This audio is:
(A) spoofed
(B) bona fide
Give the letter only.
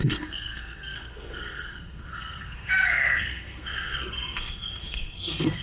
A